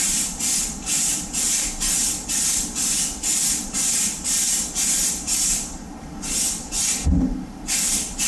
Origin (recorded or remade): recorded